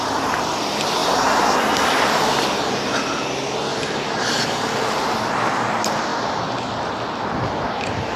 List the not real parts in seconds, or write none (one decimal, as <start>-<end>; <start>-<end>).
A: 1.0-2.2; 3.7-5.0